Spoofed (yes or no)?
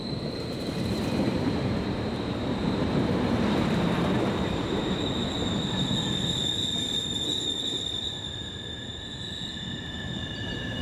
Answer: yes